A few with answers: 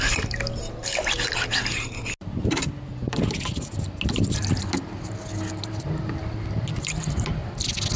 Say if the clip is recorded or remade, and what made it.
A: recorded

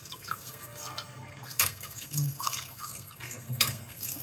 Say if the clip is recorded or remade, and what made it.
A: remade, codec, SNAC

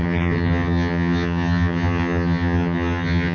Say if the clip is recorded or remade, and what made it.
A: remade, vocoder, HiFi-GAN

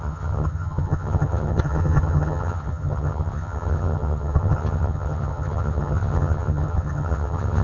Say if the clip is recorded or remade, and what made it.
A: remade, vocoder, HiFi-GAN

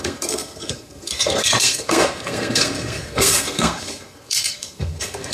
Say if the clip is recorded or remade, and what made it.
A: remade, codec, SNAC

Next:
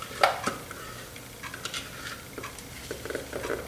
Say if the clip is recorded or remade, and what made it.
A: recorded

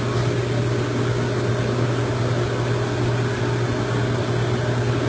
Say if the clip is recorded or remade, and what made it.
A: recorded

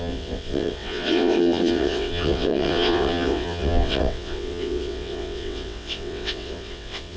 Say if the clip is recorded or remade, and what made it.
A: remade, vocoder, WaveNeXt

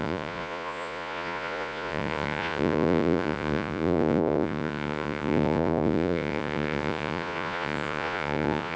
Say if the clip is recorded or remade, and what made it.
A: remade, vocoder, Vocos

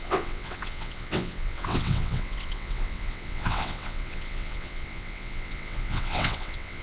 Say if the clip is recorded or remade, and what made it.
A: remade, vocoder, WaveNeXt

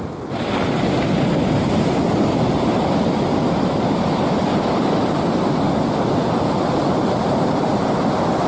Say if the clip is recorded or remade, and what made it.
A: recorded